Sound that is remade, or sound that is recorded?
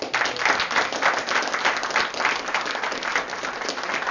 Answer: recorded